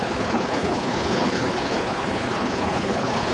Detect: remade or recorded remade